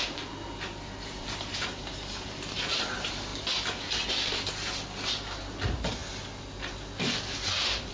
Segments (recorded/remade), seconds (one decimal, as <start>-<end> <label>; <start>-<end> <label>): 0.0-7.9 recorded